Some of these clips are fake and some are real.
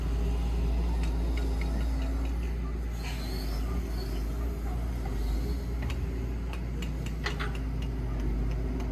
real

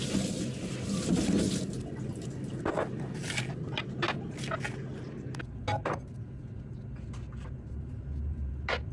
real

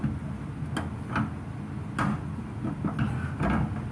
real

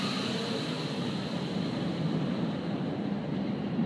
fake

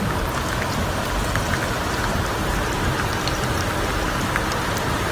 real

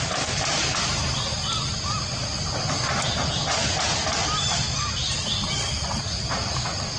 real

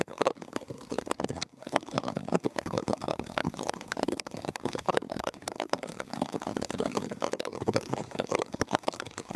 fake